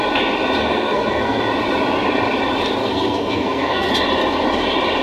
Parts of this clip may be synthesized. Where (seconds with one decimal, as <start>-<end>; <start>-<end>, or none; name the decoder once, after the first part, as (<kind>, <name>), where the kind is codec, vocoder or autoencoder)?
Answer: 0.6-1.4 (codec, SNAC); 2.8-3.9

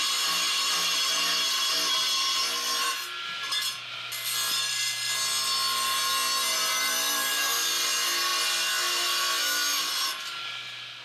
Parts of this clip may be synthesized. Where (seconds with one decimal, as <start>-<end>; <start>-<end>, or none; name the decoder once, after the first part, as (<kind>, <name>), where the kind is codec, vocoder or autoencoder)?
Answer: none

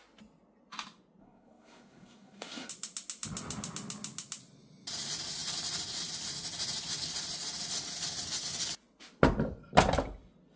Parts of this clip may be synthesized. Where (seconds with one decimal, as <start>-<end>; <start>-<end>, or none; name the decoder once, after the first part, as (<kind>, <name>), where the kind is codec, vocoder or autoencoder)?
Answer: 1.2-2.7 (codec, SNAC)

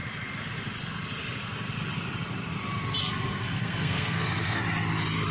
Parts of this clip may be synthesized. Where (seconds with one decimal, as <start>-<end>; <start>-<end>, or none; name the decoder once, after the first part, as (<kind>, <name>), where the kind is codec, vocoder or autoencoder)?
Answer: 3.0-4.6 (codec, SNAC)

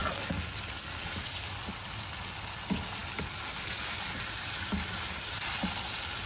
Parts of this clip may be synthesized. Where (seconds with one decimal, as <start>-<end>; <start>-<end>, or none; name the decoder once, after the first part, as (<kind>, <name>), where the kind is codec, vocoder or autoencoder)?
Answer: none

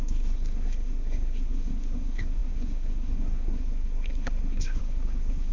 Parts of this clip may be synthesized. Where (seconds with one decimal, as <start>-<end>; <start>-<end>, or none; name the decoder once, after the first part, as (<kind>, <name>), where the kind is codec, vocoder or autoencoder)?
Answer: 0.0-5.5 (codec, SNAC)

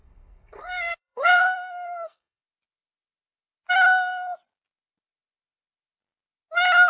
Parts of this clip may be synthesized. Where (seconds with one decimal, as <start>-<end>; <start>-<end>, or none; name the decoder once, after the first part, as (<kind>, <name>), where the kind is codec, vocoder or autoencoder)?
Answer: 0.0-2.4 (codec, SNAC)